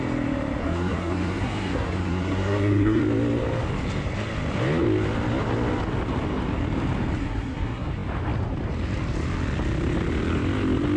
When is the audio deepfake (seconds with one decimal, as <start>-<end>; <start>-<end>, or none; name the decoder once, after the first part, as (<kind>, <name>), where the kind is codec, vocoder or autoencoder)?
0.6-3.0 (codec, SNAC); 7.2-7.9